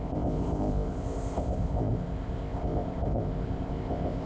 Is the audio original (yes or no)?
no